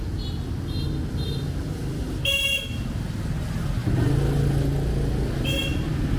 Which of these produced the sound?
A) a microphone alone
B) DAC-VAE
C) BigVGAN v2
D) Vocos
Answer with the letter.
A